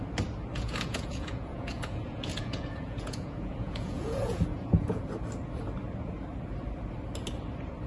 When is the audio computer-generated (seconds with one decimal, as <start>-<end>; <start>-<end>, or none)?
0.5-5.0